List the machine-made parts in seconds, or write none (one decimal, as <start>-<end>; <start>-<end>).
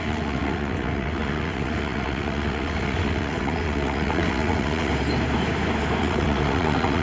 0.0-4.9; 6.0-7.0